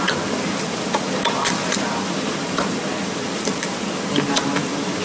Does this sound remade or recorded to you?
remade